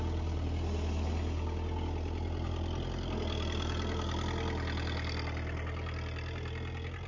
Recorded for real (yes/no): yes